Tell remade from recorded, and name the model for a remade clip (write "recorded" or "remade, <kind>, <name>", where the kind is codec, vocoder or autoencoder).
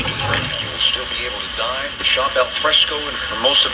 recorded